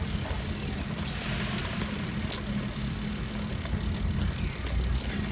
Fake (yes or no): no